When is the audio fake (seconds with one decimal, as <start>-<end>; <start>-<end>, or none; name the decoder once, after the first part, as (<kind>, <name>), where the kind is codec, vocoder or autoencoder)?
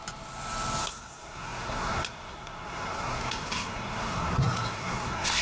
0.8-5.4 (codec, SNAC)